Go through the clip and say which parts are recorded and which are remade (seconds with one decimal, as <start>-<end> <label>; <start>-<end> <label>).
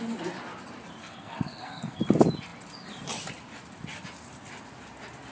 0.0-1.0 recorded; 1.0-2.0 remade; 2.0-5.3 recorded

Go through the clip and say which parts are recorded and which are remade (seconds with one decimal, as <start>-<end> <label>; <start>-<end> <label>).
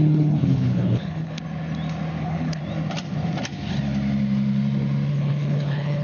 0.0-1.4 remade; 1.4-2.2 recorded; 2.2-2.6 remade; 2.6-5.1 recorded; 5.1-6.0 remade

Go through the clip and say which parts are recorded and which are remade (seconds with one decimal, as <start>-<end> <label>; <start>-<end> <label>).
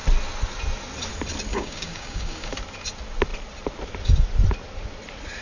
0.0-1.5 recorded; 1.5-2.5 remade; 2.5-5.4 recorded